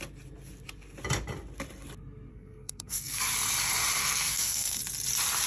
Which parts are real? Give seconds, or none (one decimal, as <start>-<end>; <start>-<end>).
0.0-2.3; 3.2-4.0; 4.8-5.5

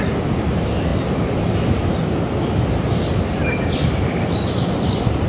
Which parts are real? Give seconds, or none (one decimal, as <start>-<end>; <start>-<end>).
0.0-5.3